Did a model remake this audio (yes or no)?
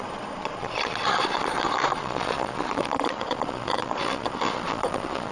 yes